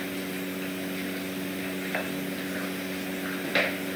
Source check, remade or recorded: recorded